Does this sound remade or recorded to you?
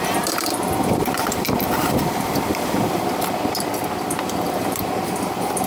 remade